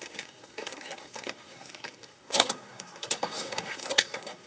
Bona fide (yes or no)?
no